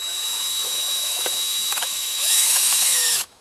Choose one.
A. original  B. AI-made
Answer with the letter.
B